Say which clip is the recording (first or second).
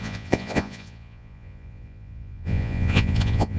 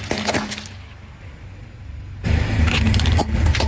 second